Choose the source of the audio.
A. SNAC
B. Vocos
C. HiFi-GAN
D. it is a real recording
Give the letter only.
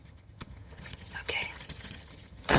C